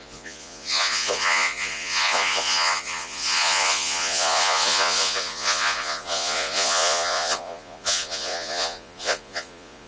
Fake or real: fake